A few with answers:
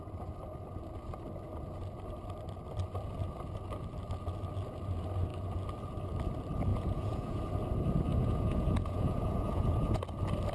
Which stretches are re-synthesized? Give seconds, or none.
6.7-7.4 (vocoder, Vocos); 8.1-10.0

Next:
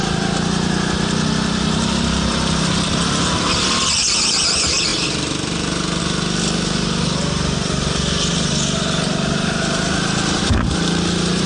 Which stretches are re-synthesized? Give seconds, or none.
none

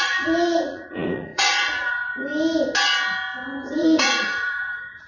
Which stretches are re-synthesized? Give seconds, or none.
0.0-2.3 (vocoder, Vocos); 3.7-5.1